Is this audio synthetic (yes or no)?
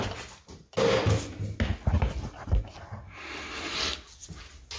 no